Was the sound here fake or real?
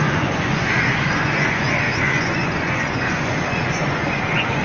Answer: fake